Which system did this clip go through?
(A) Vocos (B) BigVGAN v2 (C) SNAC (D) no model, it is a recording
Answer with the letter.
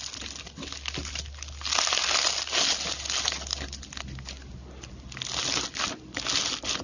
D